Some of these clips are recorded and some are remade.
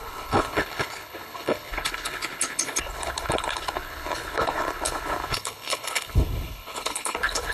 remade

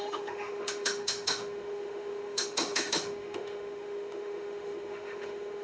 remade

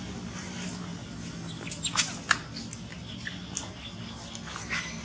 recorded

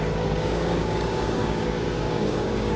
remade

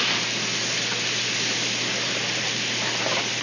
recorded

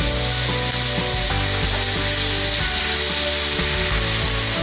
recorded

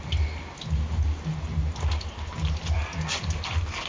recorded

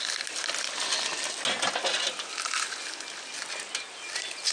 recorded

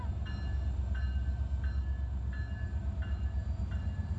recorded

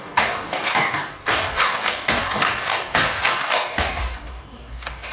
remade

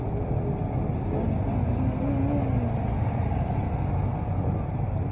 recorded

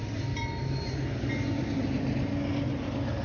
recorded